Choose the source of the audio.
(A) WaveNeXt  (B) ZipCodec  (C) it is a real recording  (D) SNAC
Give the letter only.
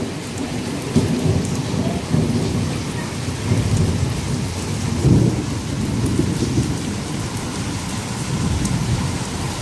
C